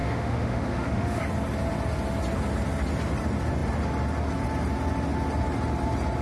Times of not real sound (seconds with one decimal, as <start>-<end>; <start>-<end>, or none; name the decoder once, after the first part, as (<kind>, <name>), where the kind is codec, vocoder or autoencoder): 0.0-1.2 (autoencoder, DAC-VAE)